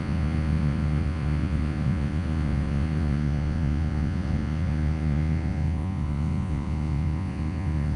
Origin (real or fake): fake